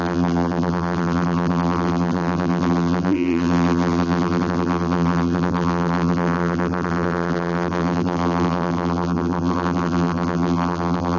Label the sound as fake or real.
fake